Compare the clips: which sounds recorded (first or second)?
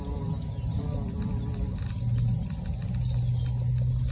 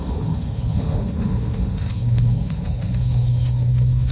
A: first